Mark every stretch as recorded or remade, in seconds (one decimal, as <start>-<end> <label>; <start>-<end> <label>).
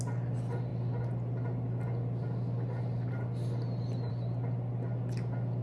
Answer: 0.0-5.6 recorded